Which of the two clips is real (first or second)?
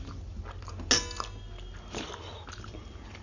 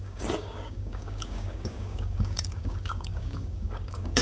first